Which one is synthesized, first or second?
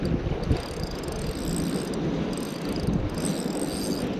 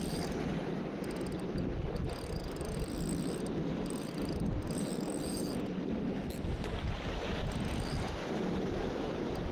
second